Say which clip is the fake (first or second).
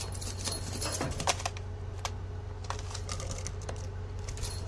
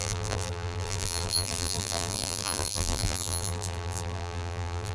second